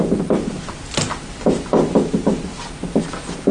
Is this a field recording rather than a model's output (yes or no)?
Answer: yes